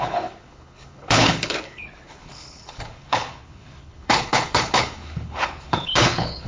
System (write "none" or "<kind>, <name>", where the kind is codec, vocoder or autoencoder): codec, HILCodec